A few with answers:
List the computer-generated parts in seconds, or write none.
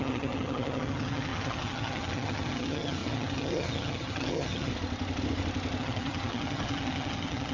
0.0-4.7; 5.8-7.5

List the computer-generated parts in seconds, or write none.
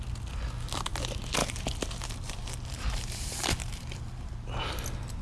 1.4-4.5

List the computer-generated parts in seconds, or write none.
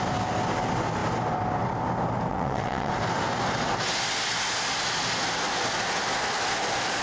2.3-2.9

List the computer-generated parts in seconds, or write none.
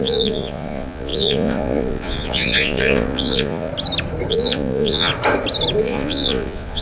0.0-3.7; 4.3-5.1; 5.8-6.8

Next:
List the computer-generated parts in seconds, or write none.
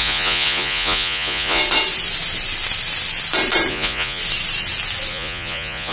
0.0-1.6; 3.7-4.2; 5.1-5.9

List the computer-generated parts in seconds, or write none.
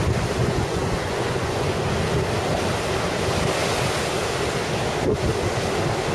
0.4-1.9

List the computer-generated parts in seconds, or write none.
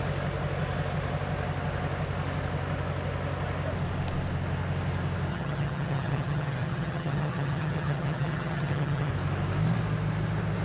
5.3-9.1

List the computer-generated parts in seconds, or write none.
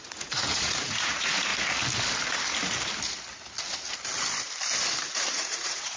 0.0-1.5; 5.1-6.0